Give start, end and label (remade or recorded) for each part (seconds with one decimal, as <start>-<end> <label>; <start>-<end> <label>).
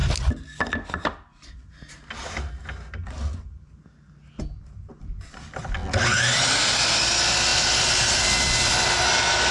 0.0-9.5 recorded